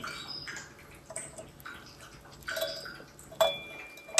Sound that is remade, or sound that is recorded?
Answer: recorded